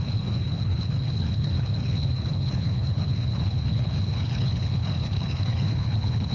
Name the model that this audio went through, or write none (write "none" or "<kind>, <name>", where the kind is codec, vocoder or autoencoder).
codec, HILCodec